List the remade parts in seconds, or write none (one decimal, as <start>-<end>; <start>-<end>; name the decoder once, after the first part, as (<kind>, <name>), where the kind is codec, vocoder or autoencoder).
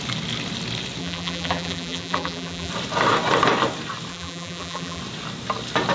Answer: 1.0-2.7 (vocoder, BigVGAN v2); 4.1-5.0